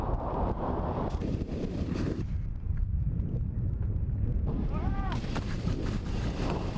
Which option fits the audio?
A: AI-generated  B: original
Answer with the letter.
A